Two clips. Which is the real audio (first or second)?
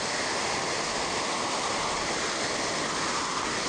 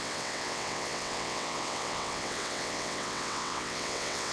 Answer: first